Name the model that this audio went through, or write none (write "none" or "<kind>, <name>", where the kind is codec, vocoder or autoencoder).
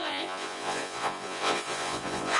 vocoder, Vocos